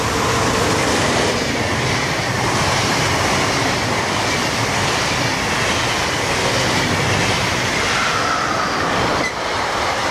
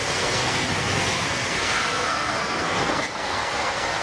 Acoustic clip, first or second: first